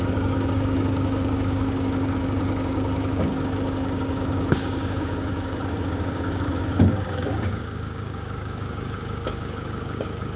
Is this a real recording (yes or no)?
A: no